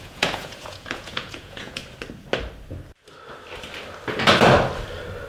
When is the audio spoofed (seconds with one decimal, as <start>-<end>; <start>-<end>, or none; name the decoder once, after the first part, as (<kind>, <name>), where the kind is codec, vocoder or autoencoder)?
0.0-1.8 (vocoder, Vocos)